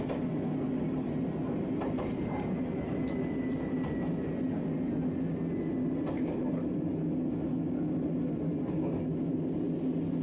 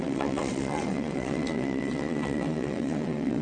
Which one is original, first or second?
first